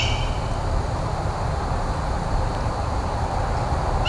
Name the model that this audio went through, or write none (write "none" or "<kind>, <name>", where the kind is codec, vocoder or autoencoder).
none